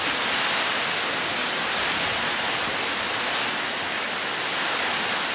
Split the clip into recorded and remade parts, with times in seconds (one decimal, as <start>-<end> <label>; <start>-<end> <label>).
0.0-5.3 recorded